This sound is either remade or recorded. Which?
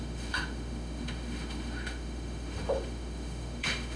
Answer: remade